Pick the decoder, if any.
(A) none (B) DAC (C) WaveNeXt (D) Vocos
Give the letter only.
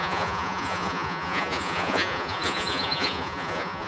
D